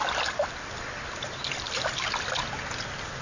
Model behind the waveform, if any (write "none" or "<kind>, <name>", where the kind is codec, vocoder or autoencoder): none